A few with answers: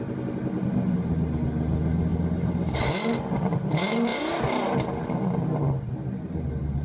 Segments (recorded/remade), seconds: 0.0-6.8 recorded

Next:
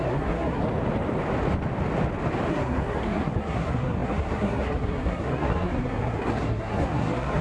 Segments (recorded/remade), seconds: 0.0-0.6 remade; 0.6-2.5 recorded; 2.5-7.4 remade

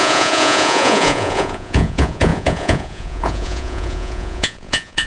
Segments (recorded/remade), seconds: 0.0-5.1 remade